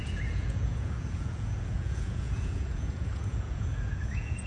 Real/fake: fake